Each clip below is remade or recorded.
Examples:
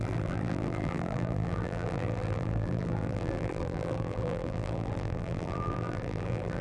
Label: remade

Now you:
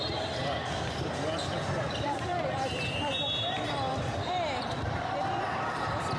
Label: remade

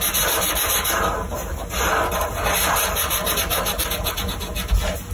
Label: recorded